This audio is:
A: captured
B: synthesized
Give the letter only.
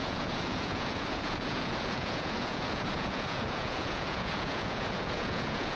B